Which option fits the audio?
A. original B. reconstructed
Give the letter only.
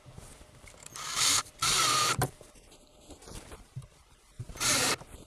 B